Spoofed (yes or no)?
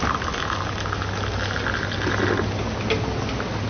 no